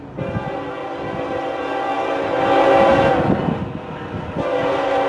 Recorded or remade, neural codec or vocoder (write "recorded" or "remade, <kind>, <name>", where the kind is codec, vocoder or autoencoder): recorded